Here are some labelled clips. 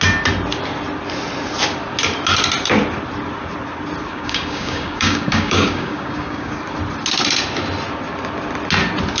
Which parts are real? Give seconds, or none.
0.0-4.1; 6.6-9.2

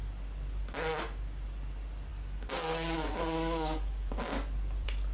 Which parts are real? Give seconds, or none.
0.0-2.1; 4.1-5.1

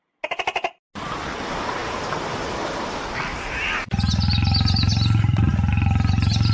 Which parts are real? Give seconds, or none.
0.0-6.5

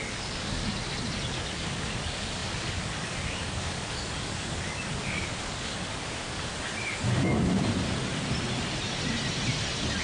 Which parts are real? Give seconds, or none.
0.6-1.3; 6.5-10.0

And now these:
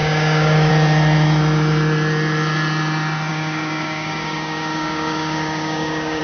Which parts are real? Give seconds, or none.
0.7-3.3

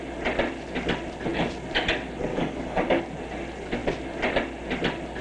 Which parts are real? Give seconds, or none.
0.0-2.3; 3.0-5.2

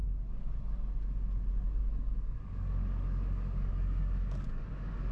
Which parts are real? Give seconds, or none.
0.0-1.8